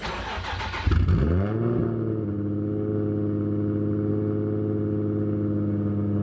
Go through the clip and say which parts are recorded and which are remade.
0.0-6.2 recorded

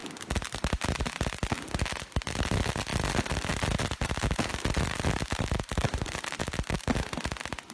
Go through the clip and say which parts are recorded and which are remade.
0.0-2.9 recorded; 2.9-6.4 remade; 6.4-7.7 recorded

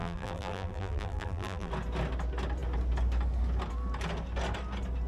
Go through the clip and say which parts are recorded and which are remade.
0.0-1.7 remade; 1.7-5.1 recorded

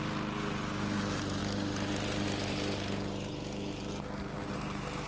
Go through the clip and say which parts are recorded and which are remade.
0.0-5.1 recorded

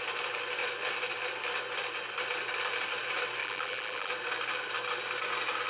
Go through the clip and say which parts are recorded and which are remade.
0.0-3.4 recorded; 3.4-4.1 remade; 4.1-5.7 recorded

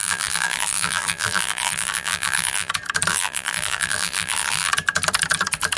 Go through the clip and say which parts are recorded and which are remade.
0.0-2.7 remade; 2.7-3.1 recorded; 3.1-4.7 remade; 4.7-5.8 recorded

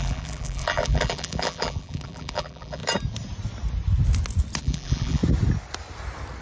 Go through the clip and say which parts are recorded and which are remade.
0.0-2.8 remade; 2.8-4.6 recorded; 4.6-5.2 remade; 5.2-6.4 recorded

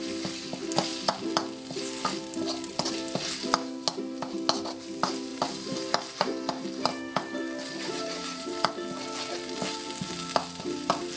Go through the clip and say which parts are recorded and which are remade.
0.0-5.3 recorded; 5.3-8.7 remade; 8.7-11.2 recorded